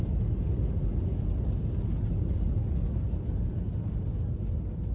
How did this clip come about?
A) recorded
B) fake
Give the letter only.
A